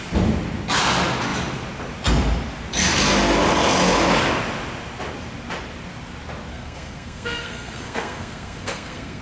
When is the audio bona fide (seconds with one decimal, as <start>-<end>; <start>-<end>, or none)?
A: 0.0-6.5